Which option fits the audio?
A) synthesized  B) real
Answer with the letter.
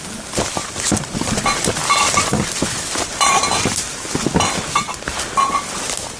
B